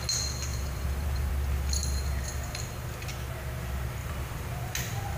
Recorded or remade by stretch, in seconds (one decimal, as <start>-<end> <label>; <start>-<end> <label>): 0.0-0.5 recorded; 0.5-1.3 remade; 1.3-4.0 recorded; 4.0-4.5 remade; 4.5-5.2 recorded